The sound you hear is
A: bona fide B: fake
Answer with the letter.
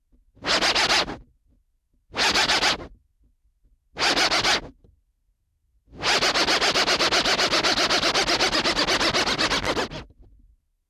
A